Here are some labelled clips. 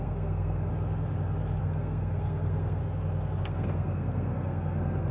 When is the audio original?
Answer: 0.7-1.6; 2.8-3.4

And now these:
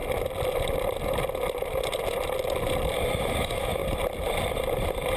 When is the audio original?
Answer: 0.0-3.1; 3.8-5.2

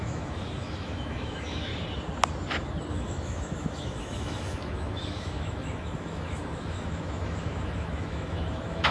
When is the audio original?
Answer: 1.7-2.9

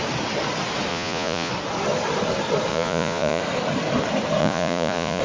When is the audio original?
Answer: 0.0-0.9; 1.5-2.7; 3.4-4.4

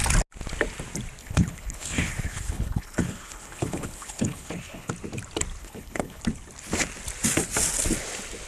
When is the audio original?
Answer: 0.0-1.2; 4.9-5.6; 6.2-8.5